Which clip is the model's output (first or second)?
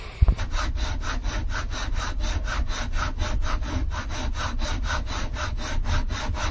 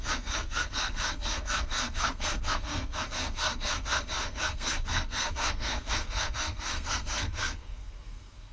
second